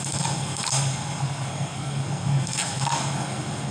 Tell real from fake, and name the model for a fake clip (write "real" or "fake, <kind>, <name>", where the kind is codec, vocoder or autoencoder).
fake, codec, SNAC